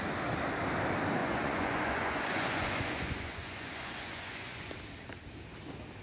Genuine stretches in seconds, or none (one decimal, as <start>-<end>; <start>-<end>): 0.0-1.2; 4.7-6.0